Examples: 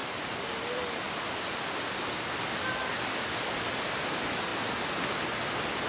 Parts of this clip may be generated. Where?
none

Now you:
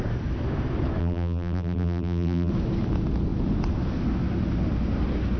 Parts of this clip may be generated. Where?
1.0-2.5 (vocoder, BigVGAN v2)

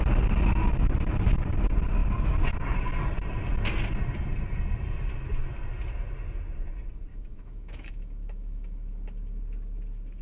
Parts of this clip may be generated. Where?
7.1-8.9 (autoencoder, DAC-VAE)

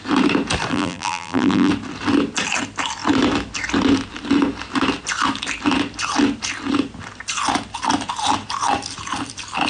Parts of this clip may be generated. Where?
0.7-1.7 (vocoder, BigVGAN v2)

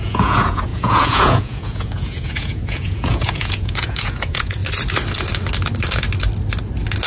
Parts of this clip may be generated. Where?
0.0-4.6 (vocoder, Vocos)

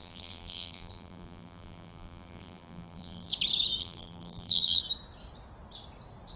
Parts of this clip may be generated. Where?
0.0-3.3 (vocoder, BigVGAN v2); 3.8-4.8

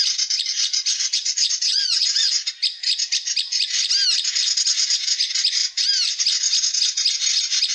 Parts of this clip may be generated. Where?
0.9-2.4 (vocoder, Vocos)